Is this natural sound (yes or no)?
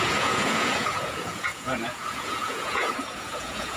no